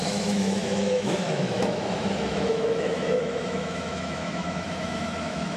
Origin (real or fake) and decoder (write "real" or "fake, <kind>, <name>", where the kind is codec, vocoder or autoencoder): fake, autoencoder, DAC-VAE